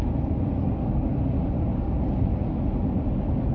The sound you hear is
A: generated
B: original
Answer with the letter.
B